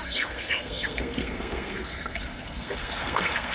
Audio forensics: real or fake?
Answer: fake